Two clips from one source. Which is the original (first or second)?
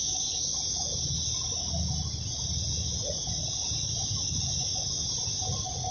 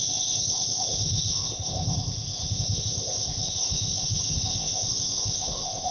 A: first